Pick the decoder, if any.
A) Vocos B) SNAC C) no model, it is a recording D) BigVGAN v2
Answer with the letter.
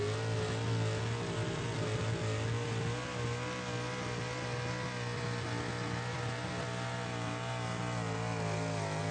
C